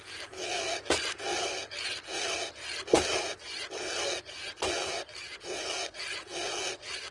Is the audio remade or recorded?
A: recorded